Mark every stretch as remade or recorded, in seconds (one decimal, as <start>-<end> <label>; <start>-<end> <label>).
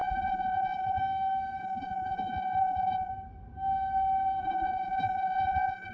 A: 0.0-1.0 remade; 1.0-1.6 recorded; 1.6-3.1 remade; 3.1-4.4 recorded; 4.4-5.9 remade